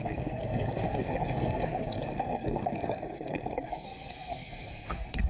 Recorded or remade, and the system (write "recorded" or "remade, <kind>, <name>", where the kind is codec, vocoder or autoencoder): remade, codec, SNAC